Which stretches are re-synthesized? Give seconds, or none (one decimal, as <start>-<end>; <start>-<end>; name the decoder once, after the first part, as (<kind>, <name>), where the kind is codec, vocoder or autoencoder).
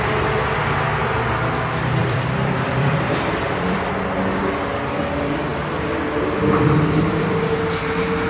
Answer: 2.0-4.4 (vocoder, BigVGAN v2)